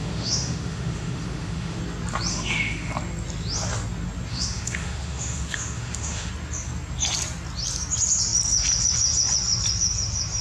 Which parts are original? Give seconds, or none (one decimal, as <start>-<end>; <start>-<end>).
1.8-2.3; 2.9-4.3; 6.3-10.4